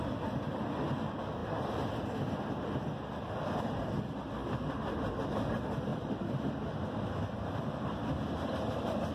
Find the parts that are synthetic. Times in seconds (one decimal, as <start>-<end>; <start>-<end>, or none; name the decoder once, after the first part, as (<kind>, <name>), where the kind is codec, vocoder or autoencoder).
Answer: none